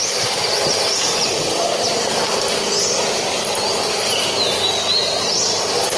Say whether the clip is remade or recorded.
recorded